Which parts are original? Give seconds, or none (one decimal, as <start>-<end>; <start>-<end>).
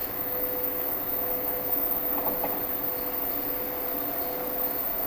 2.0-5.1